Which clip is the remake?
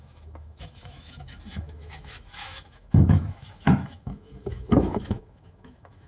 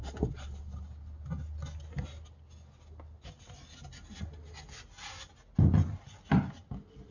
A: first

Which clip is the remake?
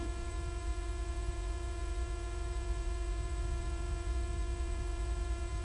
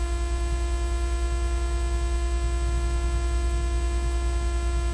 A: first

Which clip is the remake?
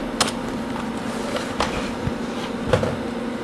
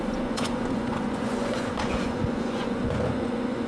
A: second